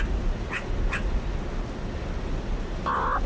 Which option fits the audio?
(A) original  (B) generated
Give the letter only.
A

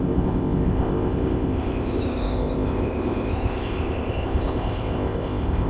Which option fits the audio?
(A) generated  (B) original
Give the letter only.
A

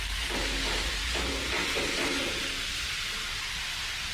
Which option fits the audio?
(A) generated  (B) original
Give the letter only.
B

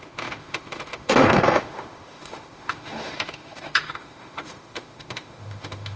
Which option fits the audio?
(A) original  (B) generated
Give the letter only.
B